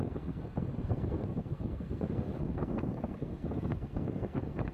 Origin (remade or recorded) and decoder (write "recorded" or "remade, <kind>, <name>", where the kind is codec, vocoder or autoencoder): remade, codec, SNAC